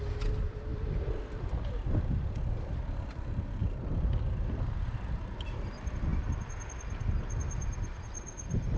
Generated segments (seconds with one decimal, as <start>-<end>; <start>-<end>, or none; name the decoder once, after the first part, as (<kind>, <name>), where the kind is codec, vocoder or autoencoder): none